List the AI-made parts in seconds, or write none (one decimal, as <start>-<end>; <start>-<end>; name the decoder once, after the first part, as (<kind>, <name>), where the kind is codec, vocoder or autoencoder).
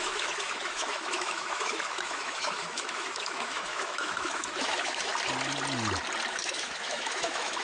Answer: 0.0-5.1 (autoencoder, DAC-VAE); 6.3-7.6